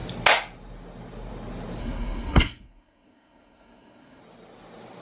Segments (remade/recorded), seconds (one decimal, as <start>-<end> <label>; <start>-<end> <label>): 0.0-1.8 recorded; 1.8-4.2 remade; 4.2-5.0 recorded